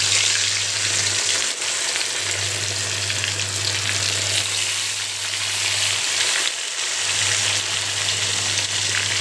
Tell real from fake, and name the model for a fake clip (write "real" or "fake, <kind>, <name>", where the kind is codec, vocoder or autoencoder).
real